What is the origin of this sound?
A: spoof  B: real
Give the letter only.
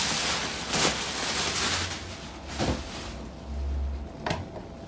B